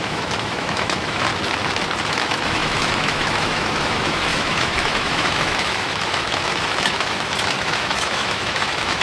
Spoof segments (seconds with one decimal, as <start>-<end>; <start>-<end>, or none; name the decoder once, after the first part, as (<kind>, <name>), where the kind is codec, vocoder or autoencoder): 0.0-1.3 (autoencoder, DAC-VAE); 2.1-9.0